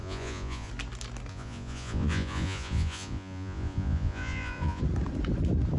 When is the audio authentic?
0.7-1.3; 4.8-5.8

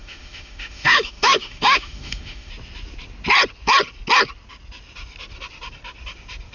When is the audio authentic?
2.5-6.5

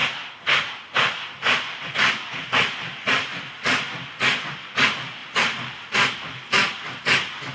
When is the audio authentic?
0.0-5.2; 7.0-7.5

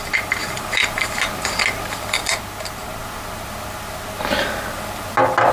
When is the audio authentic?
0.0-0.4; 1.3-5.5

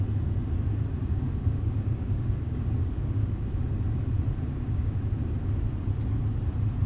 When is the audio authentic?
0.0-1.0; 3.5-4.5; 5.1-6.9

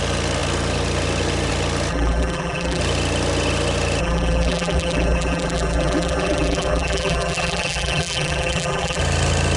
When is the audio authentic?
0.0-1.9; 2.8-4.0; 9.0-9.6

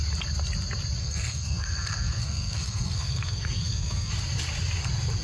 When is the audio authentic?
0.0-1.0; 4.1-5.2

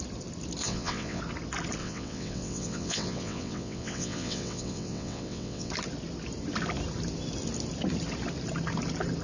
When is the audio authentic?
0.0-0.6; 1.2-1.8; 5.7-9.2